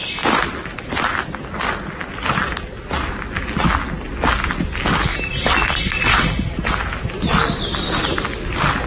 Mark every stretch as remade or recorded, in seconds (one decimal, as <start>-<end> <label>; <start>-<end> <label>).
0.0-5.4 recorded; 5.4-6.3 remade; 6.3-8.9 recorded